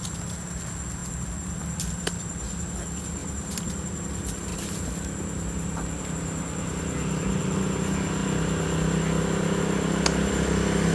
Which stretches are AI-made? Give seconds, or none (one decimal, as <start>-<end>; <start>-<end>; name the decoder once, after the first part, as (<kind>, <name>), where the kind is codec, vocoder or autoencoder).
1.0-2.7 (vocoder, BigVGAN v2); 3.2-4.0

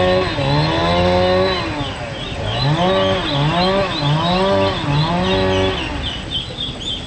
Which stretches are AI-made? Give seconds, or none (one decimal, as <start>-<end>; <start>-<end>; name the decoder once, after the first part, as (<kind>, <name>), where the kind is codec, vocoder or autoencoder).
none

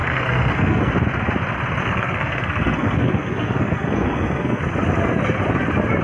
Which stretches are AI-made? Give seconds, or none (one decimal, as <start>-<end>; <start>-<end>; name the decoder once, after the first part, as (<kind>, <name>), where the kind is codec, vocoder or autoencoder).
0.0-0.9 (codec, SNAC); 1.8-4.6

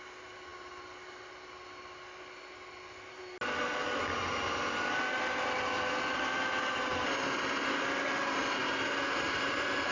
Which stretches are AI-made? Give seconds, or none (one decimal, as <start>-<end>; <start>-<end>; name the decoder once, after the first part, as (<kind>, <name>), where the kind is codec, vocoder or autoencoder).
none

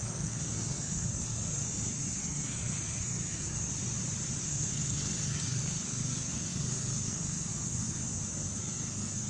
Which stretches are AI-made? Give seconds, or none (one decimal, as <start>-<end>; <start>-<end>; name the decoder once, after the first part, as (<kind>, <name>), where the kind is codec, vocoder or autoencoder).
0.0-3.7 (codec, SNAC); 4.4-9.3

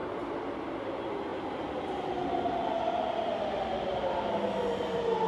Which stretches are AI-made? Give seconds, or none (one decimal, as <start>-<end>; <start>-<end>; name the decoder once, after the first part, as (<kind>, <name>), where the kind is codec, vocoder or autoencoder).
none

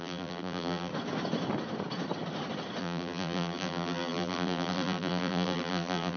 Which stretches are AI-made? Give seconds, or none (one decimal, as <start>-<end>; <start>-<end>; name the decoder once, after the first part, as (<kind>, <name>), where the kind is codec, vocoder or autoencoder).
0.0-0.9 (vocoder, BigVGAN v2); 2.8-6.2